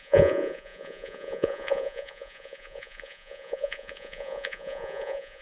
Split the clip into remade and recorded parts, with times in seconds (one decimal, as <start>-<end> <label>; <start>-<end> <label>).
0.0-5.4 remade